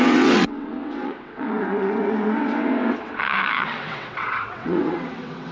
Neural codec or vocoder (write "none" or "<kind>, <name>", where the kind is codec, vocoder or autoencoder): vocoder, WaveNeXt